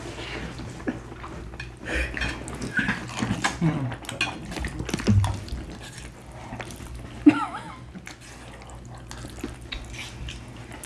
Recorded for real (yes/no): yes